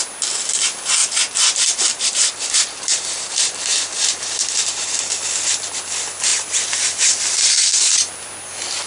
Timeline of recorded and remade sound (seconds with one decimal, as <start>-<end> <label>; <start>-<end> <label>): 0.0-1.0 recorded; 1.0-5.1 remade; 5.1-8.9 recorded